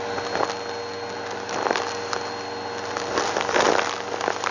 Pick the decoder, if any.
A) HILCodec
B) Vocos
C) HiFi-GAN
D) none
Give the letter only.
D